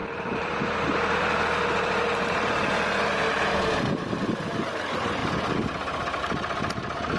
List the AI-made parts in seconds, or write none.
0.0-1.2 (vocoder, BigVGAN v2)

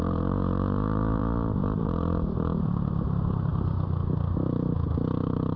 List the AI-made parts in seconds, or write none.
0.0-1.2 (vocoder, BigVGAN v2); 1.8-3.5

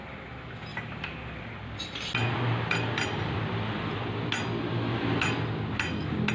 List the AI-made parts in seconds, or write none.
0.7-1.8 (vocoder, BigVGAN v2); 2.2-4.0; 4.9-5.4